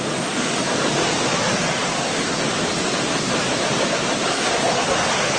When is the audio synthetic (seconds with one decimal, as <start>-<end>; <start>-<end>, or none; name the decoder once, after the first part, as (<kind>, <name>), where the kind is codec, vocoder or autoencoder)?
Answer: none